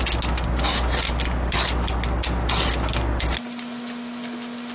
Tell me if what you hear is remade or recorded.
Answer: recorded